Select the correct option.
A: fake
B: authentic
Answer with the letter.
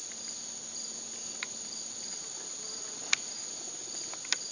B